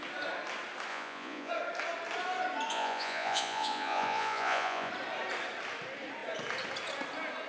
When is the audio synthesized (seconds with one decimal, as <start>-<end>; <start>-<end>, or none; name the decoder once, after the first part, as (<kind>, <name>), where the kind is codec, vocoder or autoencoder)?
0.9-1.5 (vocoder, Vocos); 2.7-4.9